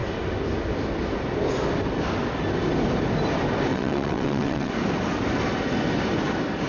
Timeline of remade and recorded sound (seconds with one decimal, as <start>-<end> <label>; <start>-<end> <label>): 0.0-3.7 recorded; 3.7-4.7 remade; 4.7-6.7 recorded